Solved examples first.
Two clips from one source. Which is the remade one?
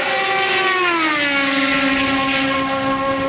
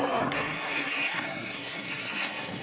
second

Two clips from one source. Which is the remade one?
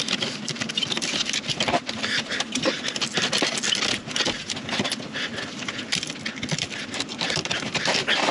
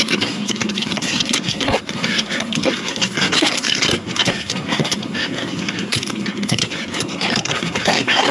second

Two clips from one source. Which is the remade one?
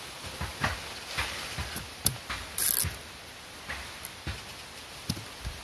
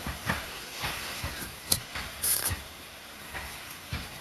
second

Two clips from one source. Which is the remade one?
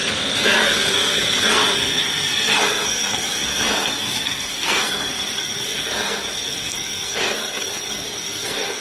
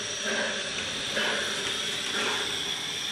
first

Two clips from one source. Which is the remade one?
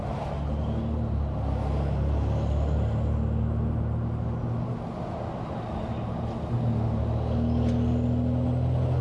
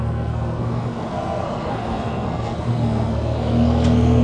second